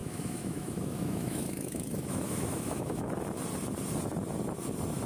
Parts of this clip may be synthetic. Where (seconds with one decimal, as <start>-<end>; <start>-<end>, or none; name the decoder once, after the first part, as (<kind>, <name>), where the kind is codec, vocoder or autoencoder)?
0.0-3.1 (autoencoder, DAC-VAE)